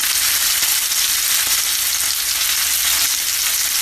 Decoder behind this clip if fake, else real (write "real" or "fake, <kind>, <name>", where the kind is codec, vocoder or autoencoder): real